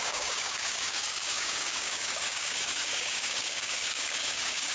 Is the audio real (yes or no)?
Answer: no